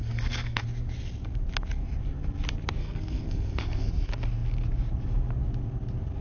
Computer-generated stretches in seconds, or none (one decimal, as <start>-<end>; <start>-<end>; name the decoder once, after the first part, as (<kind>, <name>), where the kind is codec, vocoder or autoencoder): 0.0-0.6 (codec, SNAC); 2.8-3.9